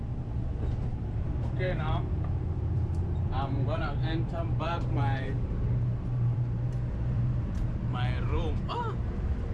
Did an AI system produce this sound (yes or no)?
yes